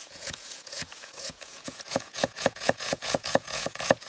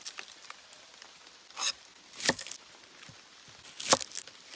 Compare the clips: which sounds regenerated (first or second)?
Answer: first